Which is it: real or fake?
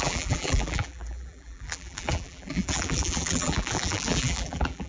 fake